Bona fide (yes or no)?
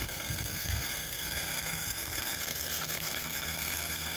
no